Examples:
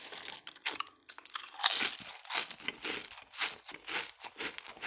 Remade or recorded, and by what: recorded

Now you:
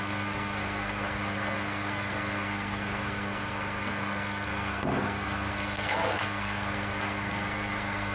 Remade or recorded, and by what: remade, codec, SNAC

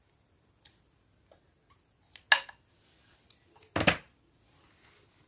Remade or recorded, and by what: recorded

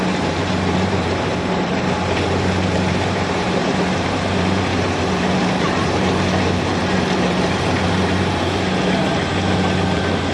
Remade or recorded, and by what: remade, vocoder, BigVGAN v2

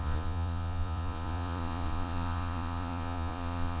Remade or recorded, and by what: remade, vocoder, Vocos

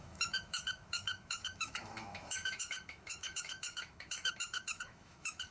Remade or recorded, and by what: remade, autoencoder, DAC-VAE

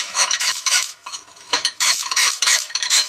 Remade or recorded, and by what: remade, autoencoder, DAC-VAE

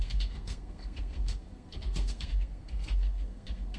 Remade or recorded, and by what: remade, codec, SNAC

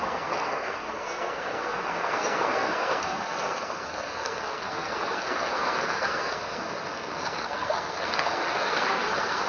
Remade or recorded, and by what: remade, codec, SNAC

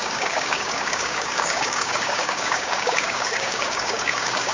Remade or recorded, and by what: remade, codec, DAC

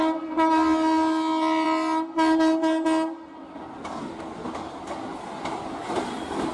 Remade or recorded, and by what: recorded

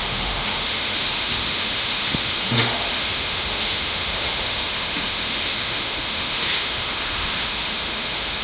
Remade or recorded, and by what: remade, autoencoder, DAC-VAE